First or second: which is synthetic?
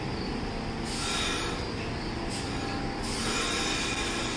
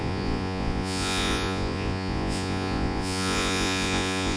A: second